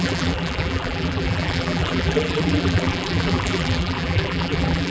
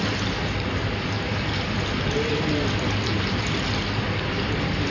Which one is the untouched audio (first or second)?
second